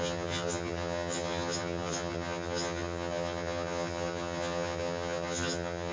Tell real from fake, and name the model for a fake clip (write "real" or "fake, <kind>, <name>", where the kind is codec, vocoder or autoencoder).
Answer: fake, vocoder, HiFi-GAN